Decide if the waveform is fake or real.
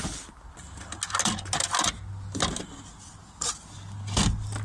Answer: real